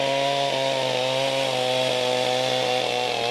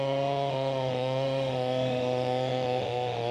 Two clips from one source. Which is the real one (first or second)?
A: first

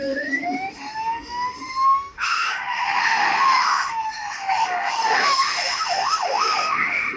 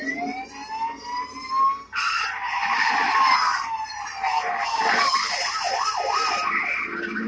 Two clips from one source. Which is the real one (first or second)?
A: second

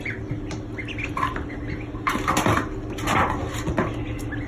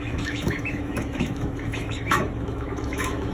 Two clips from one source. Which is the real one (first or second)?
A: first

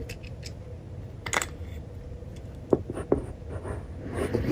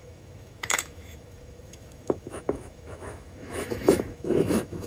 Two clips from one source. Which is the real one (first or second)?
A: first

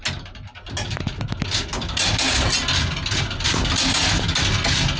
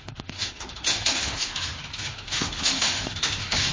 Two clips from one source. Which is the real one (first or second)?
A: first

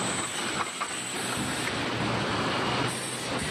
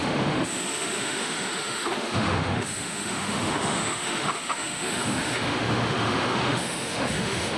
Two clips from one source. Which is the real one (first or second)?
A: first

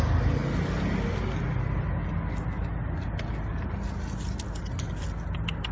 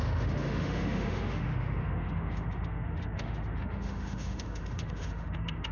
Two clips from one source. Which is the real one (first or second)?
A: first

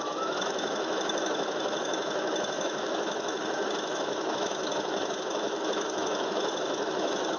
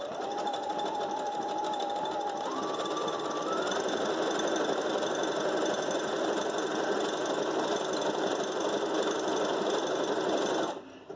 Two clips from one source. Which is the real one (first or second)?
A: second